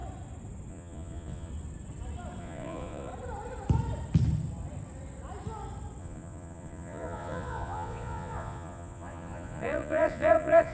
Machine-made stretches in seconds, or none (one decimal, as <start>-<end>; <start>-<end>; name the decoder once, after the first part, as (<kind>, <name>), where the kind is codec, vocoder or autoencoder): 0.7-1.5 (vocoder, Vocos); 2.4-3.1; 6.0-10.7